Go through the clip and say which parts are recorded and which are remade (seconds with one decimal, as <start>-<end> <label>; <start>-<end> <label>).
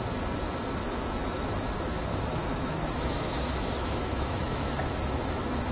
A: 0.0-0.8 recorded; 0.8-1.5 remade; 1.5-2.1 recorded; 2.1-4.7 remade; 4.7-5.7 recorded